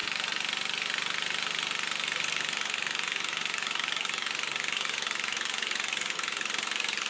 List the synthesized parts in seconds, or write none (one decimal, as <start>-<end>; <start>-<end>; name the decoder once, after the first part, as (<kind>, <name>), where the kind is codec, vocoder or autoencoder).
2.2-7.1 (codec, DAC)